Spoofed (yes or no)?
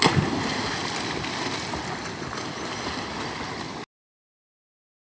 no